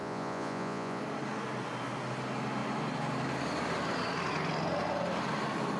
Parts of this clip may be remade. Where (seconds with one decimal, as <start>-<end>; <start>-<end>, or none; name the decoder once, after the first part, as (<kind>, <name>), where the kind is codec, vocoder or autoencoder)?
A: 0.0-1.0 (vocoder, Vocos)